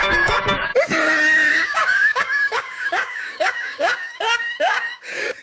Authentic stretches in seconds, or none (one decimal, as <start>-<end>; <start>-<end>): 0.7-1.5